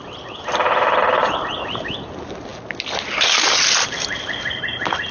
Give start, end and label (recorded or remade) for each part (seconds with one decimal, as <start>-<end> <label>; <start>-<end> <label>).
0.0-5.1 recorded